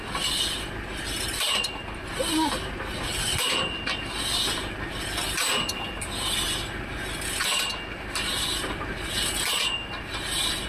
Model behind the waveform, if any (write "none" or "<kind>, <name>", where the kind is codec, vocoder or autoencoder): none